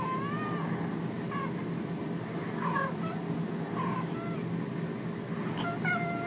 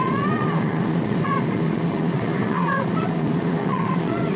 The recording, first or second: first